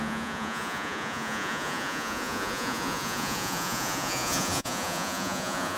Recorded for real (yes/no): no